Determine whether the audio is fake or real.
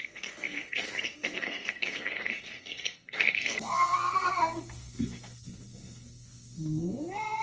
fake